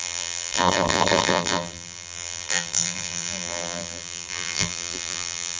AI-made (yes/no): yes